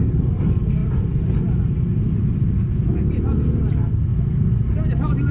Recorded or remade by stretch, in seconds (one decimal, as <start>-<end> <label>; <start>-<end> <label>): 0.0-5.3 recorded